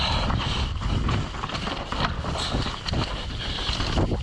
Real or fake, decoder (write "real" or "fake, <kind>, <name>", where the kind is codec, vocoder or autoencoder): real